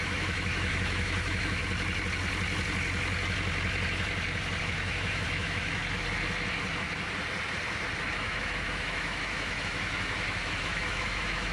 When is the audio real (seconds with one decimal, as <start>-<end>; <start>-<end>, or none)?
1.6-4.6; 5.8-8.1